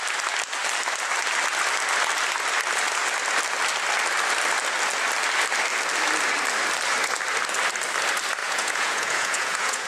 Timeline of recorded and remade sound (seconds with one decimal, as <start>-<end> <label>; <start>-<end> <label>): 0.0-8.4 recorded; 8.4-9.9 remade